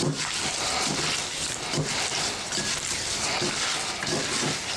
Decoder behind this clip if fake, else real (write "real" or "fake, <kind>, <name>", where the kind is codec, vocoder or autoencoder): real